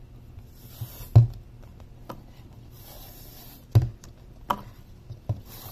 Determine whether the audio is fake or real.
real